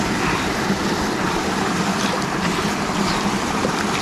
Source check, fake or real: real